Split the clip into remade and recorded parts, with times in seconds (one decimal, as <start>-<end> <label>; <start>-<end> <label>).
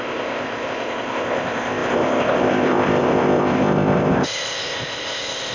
0.0-5.5 remade